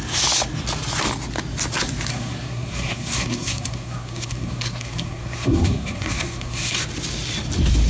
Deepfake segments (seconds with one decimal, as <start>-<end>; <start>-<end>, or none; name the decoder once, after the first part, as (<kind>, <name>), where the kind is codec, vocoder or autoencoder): 2.1-6.8 (codec, SNAC)